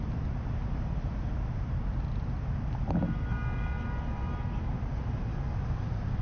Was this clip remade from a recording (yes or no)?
no